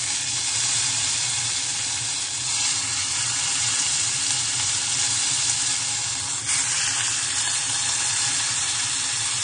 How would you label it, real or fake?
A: real